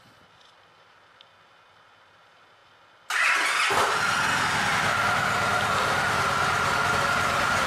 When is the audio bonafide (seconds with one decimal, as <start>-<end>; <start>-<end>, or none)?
0.0-7.7